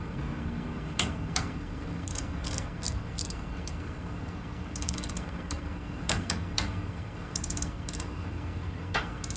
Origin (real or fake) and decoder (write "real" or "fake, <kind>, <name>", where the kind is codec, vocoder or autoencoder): fake, codec, SNAC